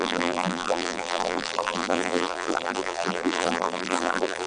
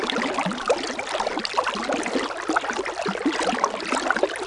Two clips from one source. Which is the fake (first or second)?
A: first